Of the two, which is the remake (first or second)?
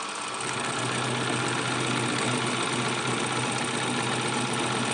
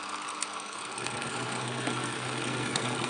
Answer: second